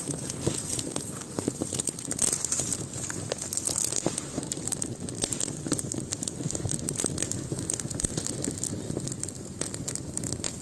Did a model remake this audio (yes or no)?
no